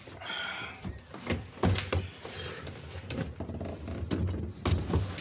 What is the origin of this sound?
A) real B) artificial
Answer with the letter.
A